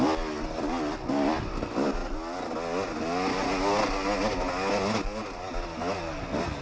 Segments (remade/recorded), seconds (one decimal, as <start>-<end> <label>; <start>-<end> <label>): 0.0-6.6 recorded